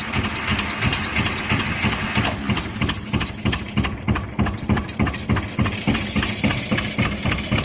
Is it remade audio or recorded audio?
recorded